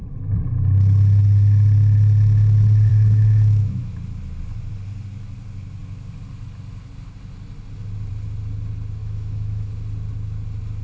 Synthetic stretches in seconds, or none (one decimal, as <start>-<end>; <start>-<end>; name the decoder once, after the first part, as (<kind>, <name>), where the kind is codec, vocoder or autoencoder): 2.9-3.9 (autoencoder, DAC-VAE); 9.0-9.7